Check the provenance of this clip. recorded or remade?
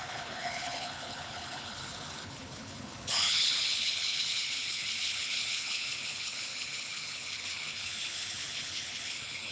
remade